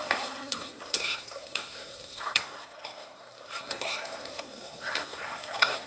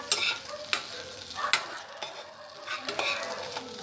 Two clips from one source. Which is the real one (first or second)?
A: second